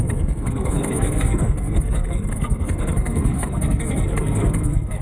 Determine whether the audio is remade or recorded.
remade